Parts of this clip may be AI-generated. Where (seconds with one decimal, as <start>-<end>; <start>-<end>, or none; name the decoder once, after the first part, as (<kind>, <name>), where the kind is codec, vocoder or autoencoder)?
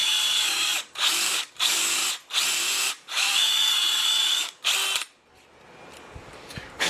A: 0.0-2.0 (codec, DAC); 2.9-4.7; 6.2-6.9